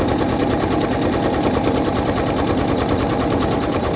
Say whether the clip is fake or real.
real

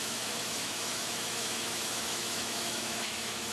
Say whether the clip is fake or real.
fake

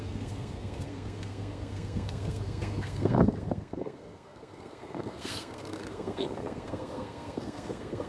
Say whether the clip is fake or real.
fake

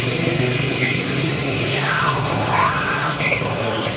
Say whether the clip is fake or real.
fake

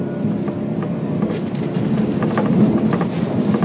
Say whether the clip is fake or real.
real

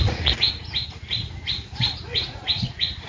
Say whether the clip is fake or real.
fake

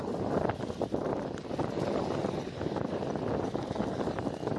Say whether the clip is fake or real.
real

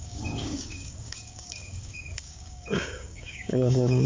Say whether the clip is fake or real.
fake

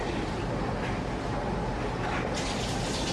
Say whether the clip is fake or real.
real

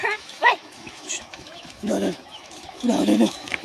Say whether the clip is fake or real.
fake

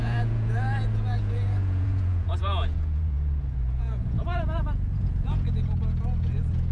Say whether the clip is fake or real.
fake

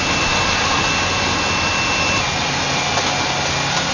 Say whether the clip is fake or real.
real